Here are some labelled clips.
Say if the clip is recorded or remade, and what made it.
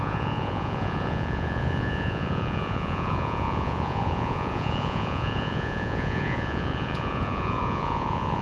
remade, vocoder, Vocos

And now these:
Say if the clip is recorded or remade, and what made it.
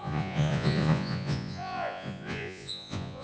remade, vocoder, Vocos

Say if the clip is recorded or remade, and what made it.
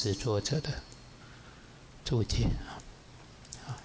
recorded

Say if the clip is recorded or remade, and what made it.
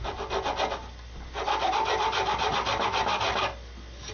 recorded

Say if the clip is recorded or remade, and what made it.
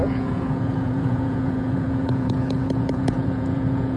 remade, vocoder, Vocos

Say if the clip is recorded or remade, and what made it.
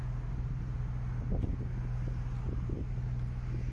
recorded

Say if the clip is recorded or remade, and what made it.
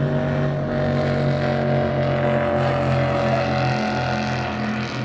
recorded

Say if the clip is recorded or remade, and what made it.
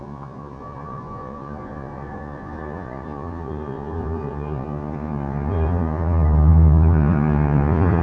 remade, vocoder, Vocos